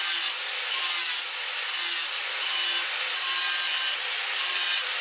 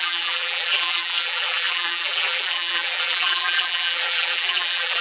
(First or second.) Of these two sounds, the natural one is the first